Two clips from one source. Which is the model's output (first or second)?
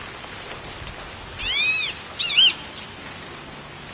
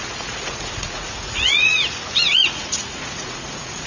second